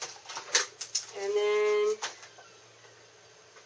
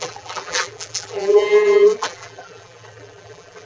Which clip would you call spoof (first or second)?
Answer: second